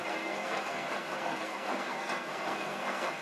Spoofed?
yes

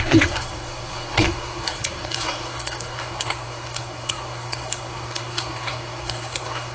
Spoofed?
yes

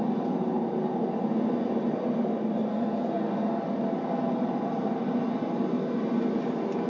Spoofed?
no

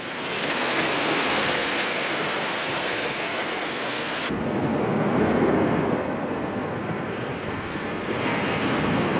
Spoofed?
yes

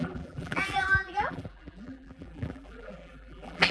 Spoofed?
yes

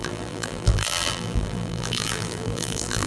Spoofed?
yes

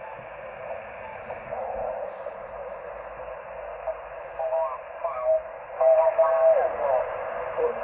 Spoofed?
no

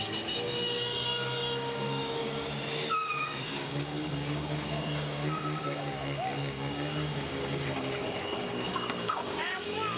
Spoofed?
yes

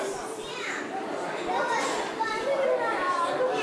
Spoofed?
yes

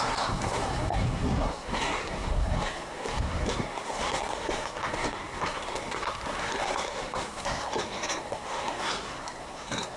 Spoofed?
yes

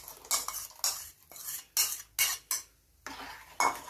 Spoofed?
no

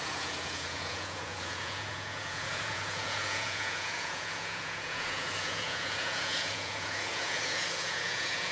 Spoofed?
yes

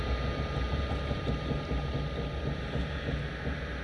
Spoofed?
no